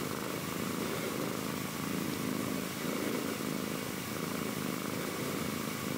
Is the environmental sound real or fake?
real